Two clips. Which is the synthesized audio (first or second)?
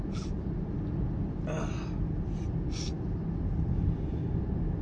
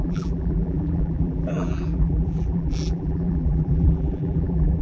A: second